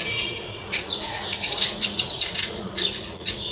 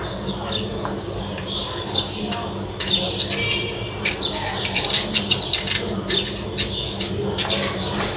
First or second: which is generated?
first